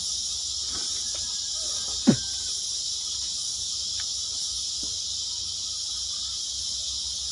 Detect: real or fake real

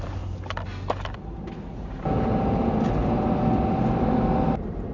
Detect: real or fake real